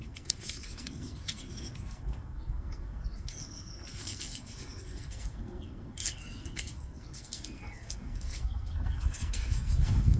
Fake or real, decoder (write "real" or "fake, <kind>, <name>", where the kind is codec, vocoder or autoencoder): fake, codec, SNAC